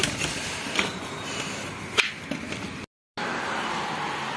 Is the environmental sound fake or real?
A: real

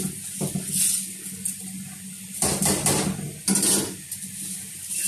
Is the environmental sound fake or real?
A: real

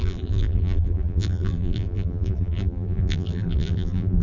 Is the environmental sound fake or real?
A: fake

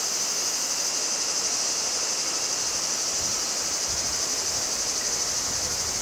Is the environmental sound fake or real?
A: real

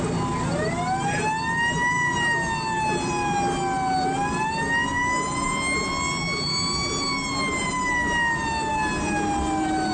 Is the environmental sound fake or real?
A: real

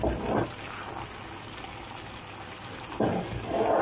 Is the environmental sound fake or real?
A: real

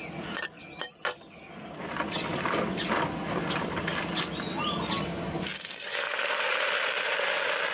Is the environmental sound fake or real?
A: real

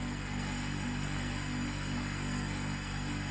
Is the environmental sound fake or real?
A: fake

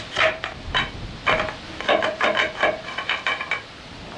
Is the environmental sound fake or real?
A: real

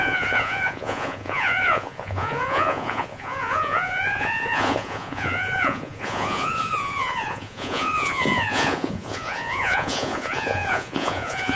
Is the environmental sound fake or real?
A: fake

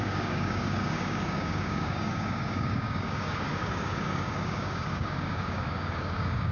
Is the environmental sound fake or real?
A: fake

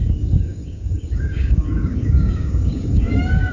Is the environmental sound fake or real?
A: fake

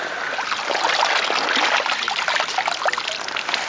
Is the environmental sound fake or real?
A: real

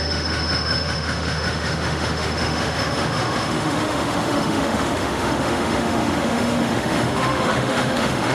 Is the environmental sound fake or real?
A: fake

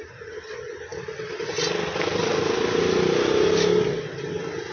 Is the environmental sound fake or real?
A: real